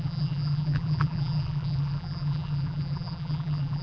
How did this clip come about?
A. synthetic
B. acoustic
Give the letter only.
A